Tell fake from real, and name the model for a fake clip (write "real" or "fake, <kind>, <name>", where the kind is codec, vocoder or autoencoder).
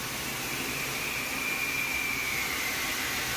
real